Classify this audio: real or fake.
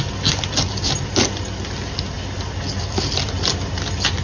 real